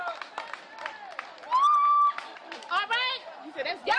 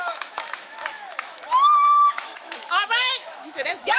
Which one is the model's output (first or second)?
second